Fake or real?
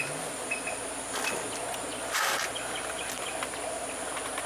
real